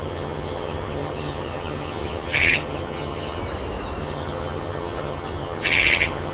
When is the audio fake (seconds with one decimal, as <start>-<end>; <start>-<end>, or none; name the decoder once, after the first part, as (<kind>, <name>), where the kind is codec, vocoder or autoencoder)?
0.0-3.4 (vocoder, HiFi-GAN); 4.0-6.3